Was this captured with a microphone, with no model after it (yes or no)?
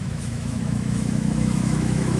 no